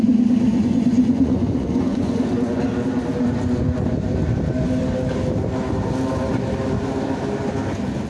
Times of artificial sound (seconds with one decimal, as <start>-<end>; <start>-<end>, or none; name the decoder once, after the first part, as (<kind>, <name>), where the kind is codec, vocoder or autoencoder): 0.5-2.6 (vocoder, Vocos)